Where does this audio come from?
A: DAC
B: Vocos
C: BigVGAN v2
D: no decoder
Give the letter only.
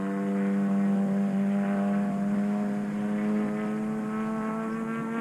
D